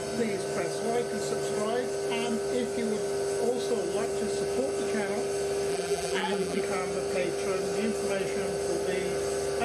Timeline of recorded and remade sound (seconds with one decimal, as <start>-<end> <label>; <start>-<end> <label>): 0.0-5.7 recorded; 5.7-6.6 remade; 6.6-9.6 recorded